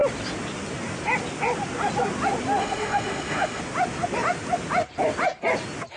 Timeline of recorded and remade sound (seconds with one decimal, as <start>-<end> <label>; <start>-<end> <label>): 0.0-2.6 recorded; 2.6-3.6 remade; 3.6-6.0 recorded